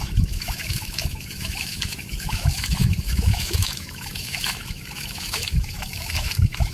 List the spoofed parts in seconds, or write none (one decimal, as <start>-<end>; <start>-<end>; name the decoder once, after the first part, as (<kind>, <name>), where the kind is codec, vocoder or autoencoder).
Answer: 0.0-6.7 (autoencoder, DAC-VAE)